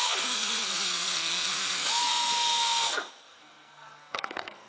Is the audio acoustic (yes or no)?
no